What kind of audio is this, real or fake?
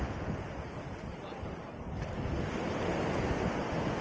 real